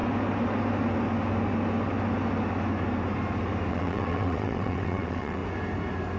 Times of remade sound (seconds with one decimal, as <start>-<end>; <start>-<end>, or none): 3.7-5.4